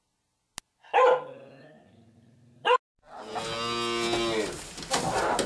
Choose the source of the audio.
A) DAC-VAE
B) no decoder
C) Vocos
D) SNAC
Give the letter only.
B